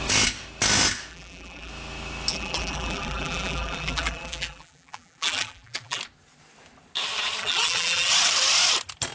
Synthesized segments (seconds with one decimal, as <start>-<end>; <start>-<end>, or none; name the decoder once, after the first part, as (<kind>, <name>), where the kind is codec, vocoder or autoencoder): 1.1-1.7 (vocoder, BigVGAN v2); 2.3-6.0; 7.4-8.1